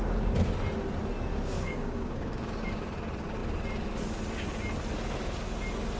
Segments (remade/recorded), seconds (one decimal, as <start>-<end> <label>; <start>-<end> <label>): 0.0-1.3 recorded; 1.3-2.7 remade; 2.7-6.0 recorded